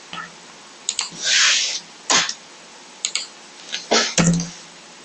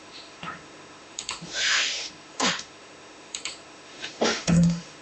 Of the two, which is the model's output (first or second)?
second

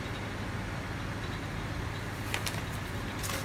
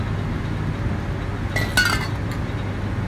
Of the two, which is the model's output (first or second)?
first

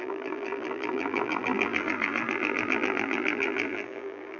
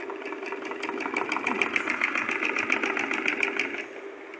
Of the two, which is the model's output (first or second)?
first